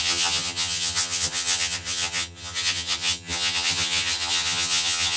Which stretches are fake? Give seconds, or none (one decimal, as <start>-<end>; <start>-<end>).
0.0-5.2